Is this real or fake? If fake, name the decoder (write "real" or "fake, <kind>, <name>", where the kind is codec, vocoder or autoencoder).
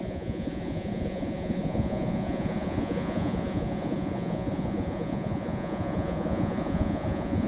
fake, vocoder, Vocos